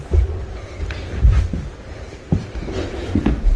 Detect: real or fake real